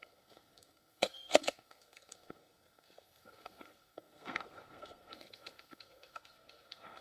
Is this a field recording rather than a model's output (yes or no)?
no